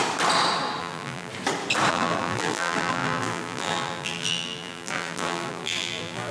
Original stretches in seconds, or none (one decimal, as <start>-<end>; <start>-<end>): 0.0-0.8; 1.3-1.9